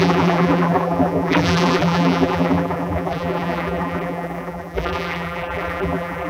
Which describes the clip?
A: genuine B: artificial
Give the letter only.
B